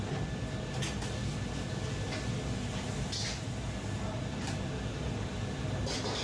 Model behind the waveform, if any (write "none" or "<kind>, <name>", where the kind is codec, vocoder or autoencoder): none